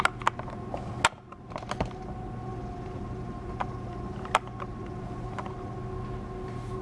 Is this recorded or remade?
recorded